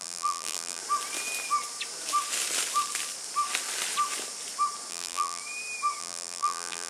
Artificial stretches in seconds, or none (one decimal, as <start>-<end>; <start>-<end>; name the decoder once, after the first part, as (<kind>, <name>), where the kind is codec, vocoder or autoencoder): 0.0-0.8 (vocoder, BigVGAN v2); 4.9-5.4; 6.0-6.9